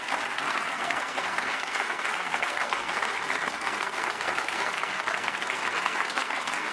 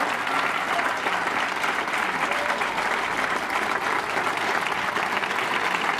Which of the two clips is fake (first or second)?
first